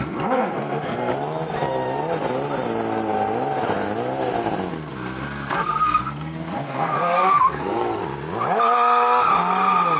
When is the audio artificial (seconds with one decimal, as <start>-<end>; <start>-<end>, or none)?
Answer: 0.0-1.1; 4.7-8.0